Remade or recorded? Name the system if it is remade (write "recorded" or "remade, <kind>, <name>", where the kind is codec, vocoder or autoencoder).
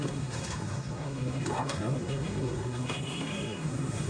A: remade, codec, SNAC